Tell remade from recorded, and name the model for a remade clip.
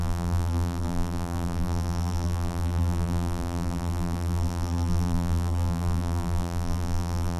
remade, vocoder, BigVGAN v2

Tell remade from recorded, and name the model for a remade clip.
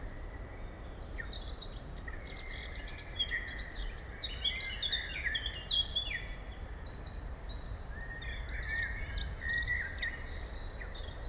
recorded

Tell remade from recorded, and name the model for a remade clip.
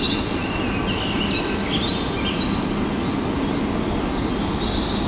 recorded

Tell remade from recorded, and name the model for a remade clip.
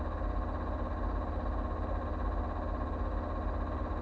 recorded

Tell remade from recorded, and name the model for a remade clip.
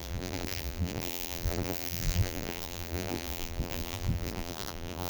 remade, vocoder, BigVGAN v2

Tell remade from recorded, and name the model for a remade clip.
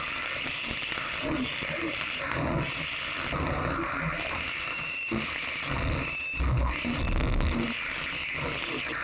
recorded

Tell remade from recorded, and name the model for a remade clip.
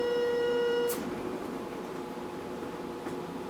remade, vocoder, BigVGAN v2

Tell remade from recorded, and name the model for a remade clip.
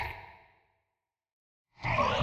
recorded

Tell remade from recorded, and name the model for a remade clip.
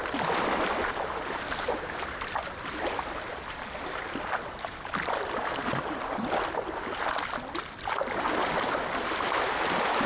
recorded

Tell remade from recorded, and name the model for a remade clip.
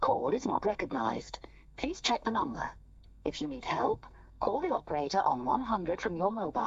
remade, codec, SNAC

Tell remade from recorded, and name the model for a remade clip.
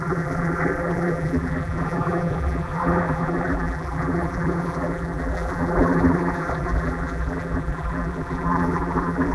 remade, vocoder, BigVGAN v2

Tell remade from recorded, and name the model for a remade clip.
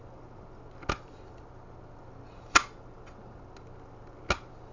recorded